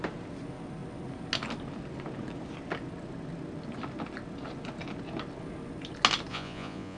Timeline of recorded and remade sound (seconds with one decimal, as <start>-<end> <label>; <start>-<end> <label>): 0.0-6.3 recorded; 6.3-7.0 remade